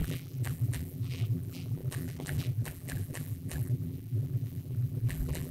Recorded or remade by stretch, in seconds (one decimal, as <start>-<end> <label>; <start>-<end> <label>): 0.0-5.5 remade